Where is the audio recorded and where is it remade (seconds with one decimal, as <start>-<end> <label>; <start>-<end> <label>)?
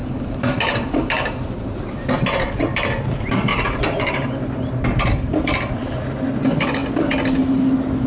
0.0-1.8 remade; 1.8-3.5 recorded; 3.5-5.1 remade; 5.1-8.1 recorded